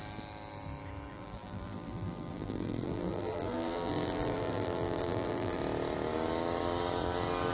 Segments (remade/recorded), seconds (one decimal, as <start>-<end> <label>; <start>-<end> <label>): 0.0-1.1 recorded; 1.1-5.6 remade; 5.6-7.5 recorded

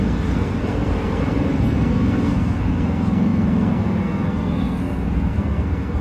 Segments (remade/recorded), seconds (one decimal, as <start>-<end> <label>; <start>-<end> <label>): 0.0-6.0 remade

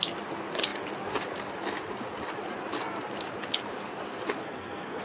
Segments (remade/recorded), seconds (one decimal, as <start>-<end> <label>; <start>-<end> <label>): 0.0-4.4 recorded; 4.4-5.0 remade